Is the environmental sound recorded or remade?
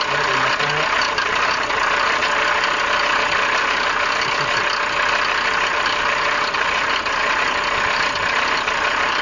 recorded